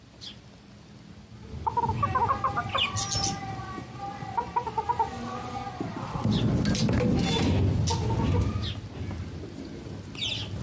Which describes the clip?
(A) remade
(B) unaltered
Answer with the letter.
B